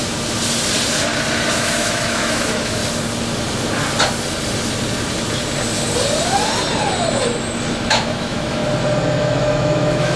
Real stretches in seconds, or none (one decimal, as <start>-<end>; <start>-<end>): 0.0-1.5; 2.8-7.9; 8.6-9.2